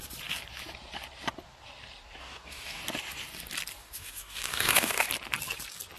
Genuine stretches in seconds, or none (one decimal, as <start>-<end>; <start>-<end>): 0.0-2.2; 2.8-3.8; 5.1-6.0